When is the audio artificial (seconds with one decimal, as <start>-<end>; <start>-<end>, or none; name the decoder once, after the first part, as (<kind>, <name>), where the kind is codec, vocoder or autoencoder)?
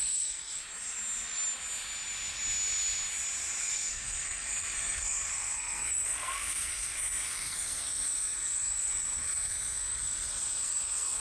0.0-0.6 (codec, SNAC); 3.6-11.2